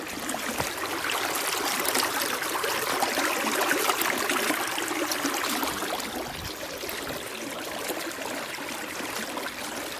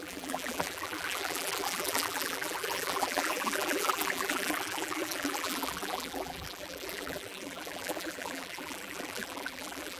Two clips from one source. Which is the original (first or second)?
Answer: first